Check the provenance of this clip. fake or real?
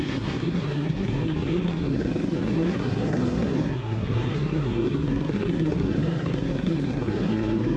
fake